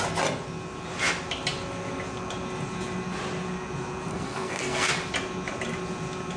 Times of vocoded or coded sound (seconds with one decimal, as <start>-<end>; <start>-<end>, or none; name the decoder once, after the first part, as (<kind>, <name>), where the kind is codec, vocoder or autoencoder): 4.1-4.9 (codec, SNAC)